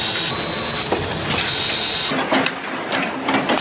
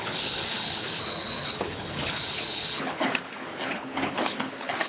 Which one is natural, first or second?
first